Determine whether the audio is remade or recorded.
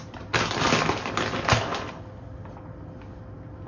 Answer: recorded